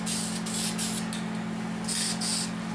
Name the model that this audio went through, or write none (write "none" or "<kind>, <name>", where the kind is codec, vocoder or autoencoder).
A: none